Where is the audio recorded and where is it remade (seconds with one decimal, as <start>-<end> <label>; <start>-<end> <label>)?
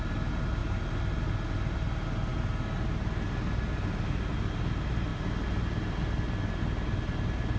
0.0-7.6 recorded